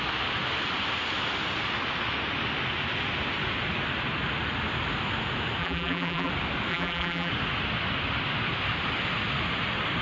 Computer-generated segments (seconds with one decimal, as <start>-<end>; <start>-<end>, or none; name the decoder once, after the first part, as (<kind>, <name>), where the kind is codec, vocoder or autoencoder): 5.6-6.3 (vocoder, BigVGAN v2); 6.7-7.3